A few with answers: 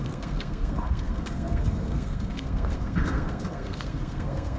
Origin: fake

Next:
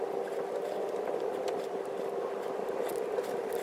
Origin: real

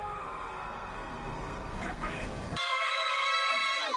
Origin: fake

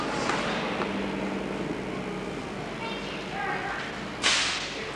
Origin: real